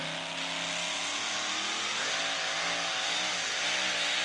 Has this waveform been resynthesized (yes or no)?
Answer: no